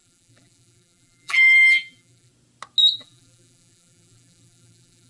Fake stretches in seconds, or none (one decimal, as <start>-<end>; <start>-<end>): 0.0-2.3; 2.8-5.1